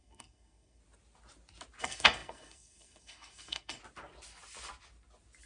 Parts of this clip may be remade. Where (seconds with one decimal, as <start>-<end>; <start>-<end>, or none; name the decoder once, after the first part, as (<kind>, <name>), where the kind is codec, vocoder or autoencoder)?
0.0-0.8 (codec, SNAC); 1.8-3.8